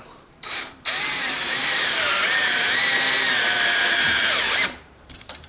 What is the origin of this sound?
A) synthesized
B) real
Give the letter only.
A